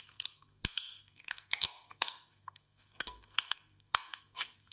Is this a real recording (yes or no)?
no